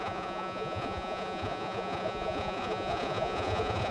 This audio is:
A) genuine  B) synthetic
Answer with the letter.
B